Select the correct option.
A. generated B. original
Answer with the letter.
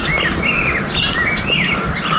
B